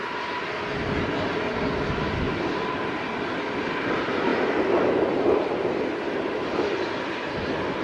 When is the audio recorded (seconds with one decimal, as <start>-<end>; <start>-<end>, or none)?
0.0-7.8